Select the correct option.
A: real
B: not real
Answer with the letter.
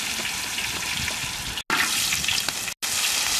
A